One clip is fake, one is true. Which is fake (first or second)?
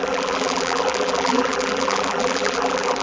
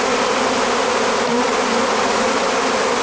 first